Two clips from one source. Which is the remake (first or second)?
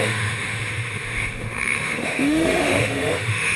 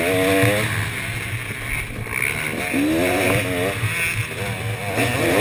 first